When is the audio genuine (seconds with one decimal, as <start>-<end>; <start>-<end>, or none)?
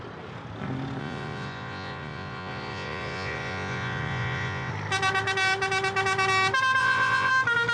0.0-1.0; 4.7-6.8; 7.3-7.7